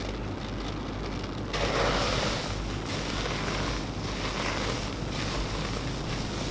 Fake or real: real